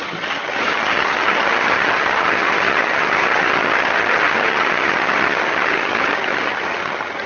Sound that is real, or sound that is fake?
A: fake